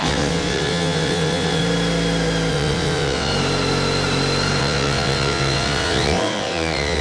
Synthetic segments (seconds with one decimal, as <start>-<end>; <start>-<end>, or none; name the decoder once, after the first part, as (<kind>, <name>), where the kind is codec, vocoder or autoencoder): 0.0-1.6 (vocoder, WaveNeXt); 2.5-3.3; 4.6-7.0